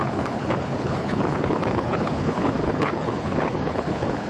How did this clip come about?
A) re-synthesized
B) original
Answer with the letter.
A